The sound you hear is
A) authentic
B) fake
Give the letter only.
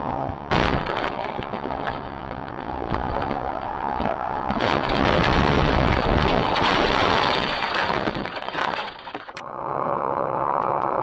B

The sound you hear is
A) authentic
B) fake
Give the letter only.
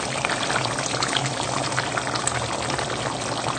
A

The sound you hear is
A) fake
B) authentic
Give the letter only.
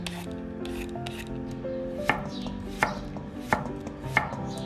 B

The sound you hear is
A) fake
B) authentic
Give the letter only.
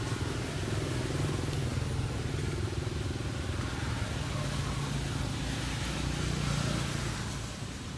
B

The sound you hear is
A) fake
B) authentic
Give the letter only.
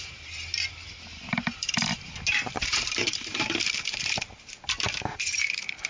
A